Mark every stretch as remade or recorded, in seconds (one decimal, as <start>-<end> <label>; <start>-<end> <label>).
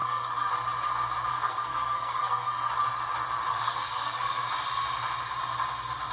0.0-0.5 remade; 0.5-1.3 recorded; 1.3-2.7 remade; 2.7-3.5 recorded; 3.5-4.5 remade; 4.5-6.1 recorded